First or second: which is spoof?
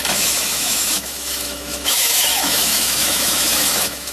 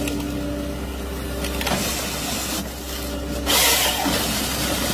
first